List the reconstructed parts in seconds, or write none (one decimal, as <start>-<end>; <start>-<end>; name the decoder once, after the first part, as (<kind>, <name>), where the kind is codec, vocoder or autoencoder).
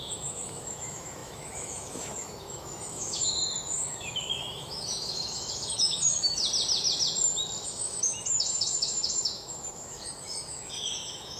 0.0-6.4 (autoencoder, DAC-VAE); 7.6-11.4